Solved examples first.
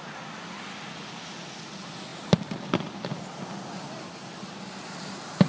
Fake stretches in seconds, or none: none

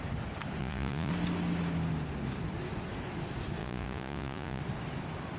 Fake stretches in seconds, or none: 0.6-1.1 (vocoder, Vocos); 3.6-4.6

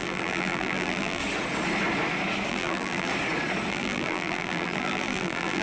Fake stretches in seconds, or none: 0.0-1.2 (vocoder, BigVGAN v2); 2.5-3.1; 3.7-5.6

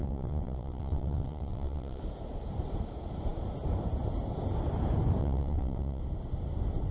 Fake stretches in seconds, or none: 0.0-2.0 (vocoder, WaveNeXt); 5.2-6.0

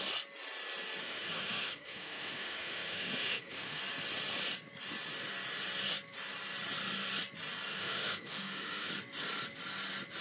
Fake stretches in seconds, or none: 1.0-3.8 (autoencoder, DAC-VAE); 7.7-8.9

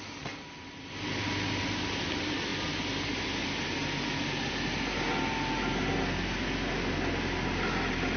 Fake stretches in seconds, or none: none